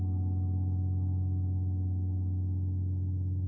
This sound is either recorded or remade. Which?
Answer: recorded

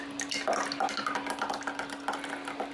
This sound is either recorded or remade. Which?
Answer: recorded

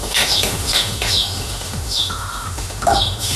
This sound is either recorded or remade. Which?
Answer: remade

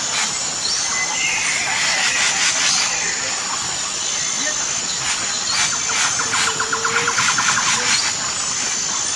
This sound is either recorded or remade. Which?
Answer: recorded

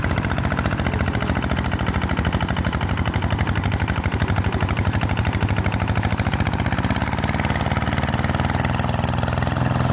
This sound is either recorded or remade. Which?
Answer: recorded